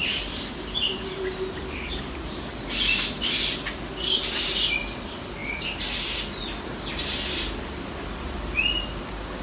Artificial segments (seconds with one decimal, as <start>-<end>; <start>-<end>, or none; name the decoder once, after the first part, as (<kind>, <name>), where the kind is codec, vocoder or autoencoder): 0.0-2.5 (vocoder, BigVGAN v2)